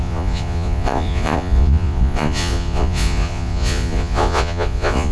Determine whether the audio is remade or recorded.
remade